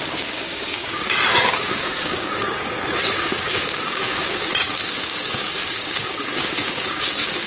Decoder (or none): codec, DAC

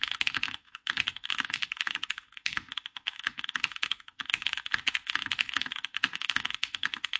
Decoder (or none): autoencoder, DAC-VAE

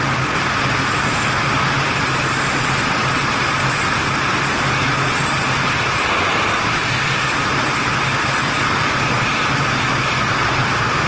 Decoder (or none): none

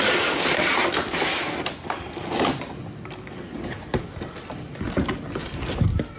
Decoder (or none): none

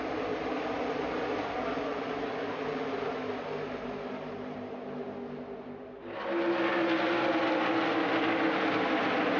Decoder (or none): none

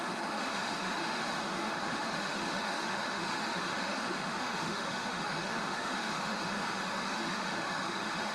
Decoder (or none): autoencoder, DAC-VAE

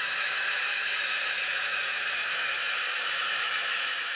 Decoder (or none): autoencoder, DAC-VAE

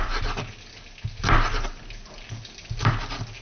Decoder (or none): none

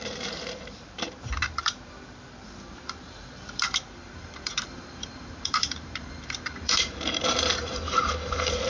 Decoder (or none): vocoder, BigVGAN v2